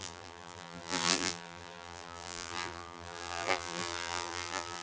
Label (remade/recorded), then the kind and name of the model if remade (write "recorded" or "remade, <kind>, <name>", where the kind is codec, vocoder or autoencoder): remade, vocoder, BigVGAN v2